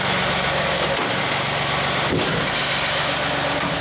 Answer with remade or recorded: recorded